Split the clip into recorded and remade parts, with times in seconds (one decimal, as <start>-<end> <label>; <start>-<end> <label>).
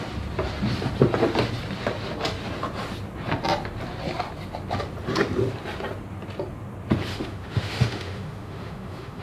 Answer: 0.0-7.1 recorded; 7.1-9.2 remade